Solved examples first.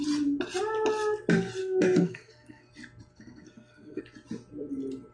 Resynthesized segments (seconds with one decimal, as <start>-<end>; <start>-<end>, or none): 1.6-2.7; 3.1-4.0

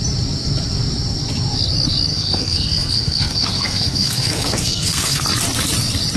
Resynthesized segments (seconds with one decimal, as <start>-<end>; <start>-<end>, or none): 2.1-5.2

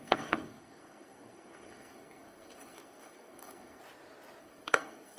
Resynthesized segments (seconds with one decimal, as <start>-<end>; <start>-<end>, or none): 0.0-3.8; 4.4-5.2

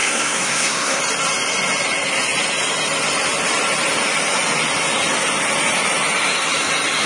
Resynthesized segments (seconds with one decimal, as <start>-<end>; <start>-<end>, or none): 0.0-1.0

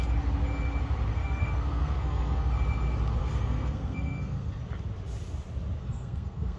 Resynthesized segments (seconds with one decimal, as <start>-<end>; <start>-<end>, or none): 1.1-2.5; 3.2-4.6; 5.8-6.6

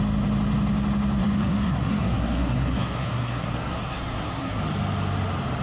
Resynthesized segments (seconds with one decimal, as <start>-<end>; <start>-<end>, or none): 1.2-4.6

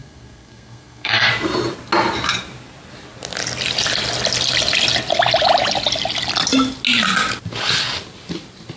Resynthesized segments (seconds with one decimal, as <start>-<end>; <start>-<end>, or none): 0.0-1.3

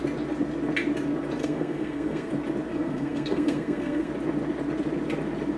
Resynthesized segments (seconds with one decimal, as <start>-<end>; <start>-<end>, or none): 1.4-2.3; 2.7-4.1